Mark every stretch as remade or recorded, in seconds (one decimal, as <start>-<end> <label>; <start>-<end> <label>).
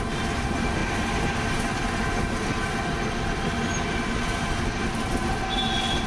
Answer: 0.0-6.1 recorded